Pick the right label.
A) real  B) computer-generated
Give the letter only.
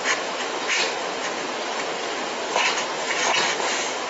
B